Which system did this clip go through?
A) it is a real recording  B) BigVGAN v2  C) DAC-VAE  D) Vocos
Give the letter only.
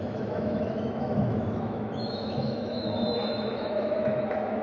C